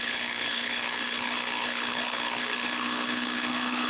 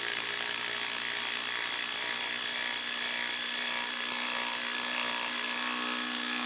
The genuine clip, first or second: second